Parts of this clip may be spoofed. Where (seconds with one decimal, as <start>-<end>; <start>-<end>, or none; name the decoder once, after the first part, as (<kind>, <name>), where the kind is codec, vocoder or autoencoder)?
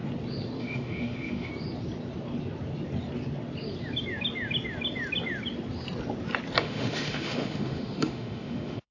0.6-1.5 (autoencoder, DAC-VAE); 6.6-8.9